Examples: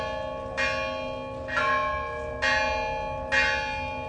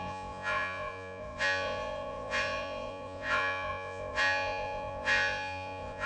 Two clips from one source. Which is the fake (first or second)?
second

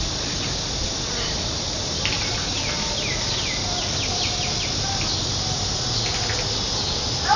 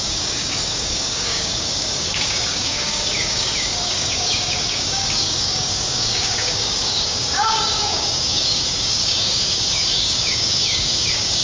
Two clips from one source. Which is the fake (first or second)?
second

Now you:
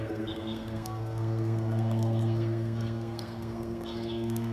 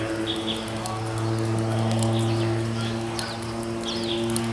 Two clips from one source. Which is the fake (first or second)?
first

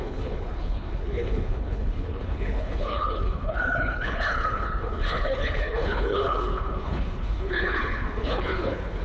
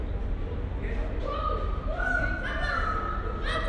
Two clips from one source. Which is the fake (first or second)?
first